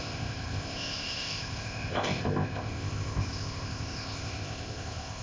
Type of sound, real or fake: fake